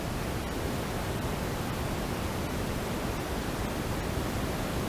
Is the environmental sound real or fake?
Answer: real